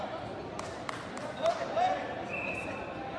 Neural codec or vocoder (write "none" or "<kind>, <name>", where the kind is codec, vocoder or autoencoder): vocoder, BigVGAN v2